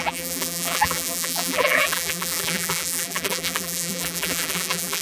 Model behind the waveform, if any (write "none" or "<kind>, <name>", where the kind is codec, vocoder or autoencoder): vocoder, BigVGAN v2